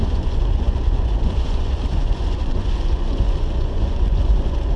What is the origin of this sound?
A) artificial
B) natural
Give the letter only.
A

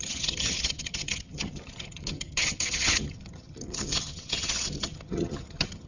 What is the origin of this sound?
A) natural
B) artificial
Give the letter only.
B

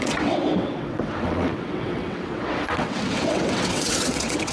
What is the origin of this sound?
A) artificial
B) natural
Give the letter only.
A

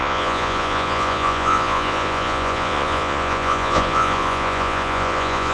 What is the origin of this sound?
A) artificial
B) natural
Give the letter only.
A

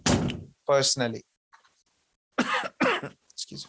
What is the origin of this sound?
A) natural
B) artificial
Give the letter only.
A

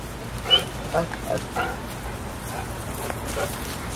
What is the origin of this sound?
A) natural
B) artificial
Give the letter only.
A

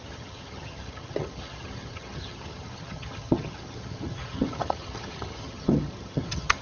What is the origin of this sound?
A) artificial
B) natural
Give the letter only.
A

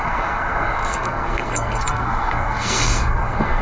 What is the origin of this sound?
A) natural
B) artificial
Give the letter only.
B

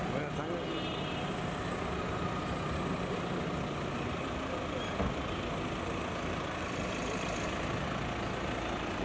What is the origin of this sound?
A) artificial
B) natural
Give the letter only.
B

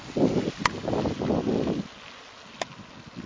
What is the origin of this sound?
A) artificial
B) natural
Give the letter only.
B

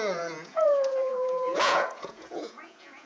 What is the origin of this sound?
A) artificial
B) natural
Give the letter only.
A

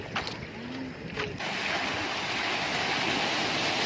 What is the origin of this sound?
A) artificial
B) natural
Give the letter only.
B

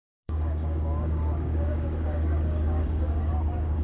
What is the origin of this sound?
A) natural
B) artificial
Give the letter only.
B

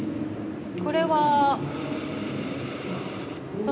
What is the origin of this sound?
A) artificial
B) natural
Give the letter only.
B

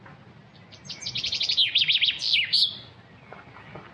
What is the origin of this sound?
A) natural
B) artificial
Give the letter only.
A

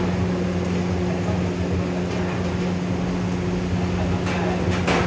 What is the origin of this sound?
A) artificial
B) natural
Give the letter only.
B